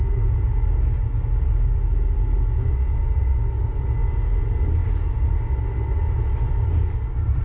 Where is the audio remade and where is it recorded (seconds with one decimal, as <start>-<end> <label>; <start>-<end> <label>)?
0.0-7.4 recorded